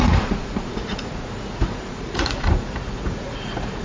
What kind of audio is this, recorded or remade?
remade